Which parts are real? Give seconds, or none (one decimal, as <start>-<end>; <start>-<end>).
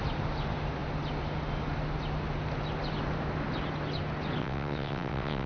0.0-4.4